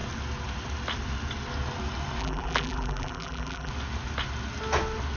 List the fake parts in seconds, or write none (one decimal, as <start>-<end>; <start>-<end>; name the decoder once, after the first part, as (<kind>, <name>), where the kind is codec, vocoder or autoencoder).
2.2-3.7 (vocoder, BigVGAN v2)